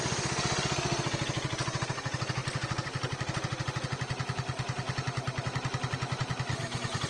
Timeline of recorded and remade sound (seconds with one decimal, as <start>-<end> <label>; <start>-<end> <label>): 0.0-7.1 recorded